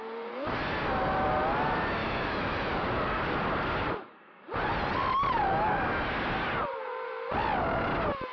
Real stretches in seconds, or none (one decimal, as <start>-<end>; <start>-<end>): 0.0-2.0; 2.7-8.3